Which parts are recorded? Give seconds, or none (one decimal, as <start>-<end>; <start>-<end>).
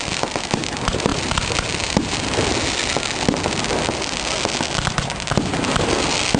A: 0.0-6.4